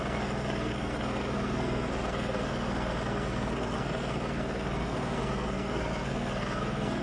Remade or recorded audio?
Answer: remade